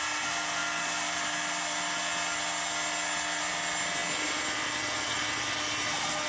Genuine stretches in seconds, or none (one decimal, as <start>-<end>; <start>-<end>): 0.0-6.3